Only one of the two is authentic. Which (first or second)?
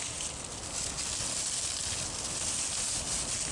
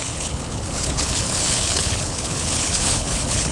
first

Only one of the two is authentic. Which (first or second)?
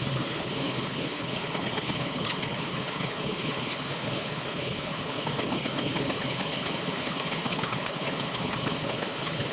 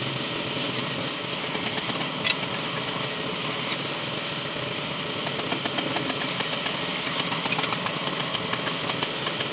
second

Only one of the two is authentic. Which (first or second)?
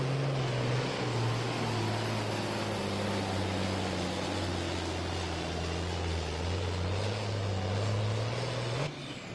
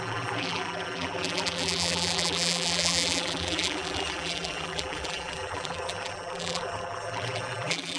first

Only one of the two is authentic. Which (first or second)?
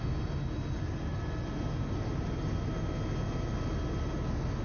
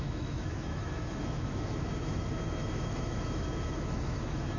first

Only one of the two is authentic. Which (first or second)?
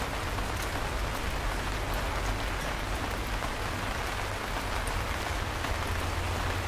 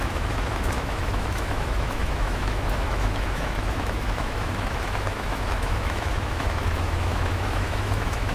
first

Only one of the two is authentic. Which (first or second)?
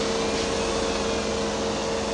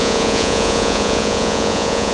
first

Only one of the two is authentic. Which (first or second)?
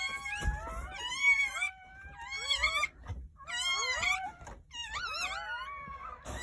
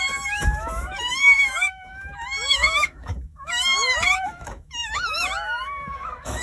first